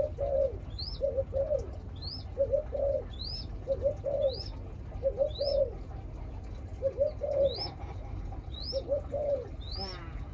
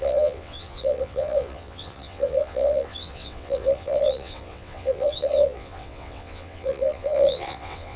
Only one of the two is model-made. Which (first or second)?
second